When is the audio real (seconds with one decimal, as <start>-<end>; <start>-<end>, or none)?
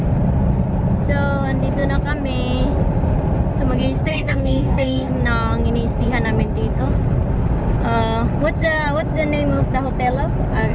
0.0-4.1; 5.1-10.7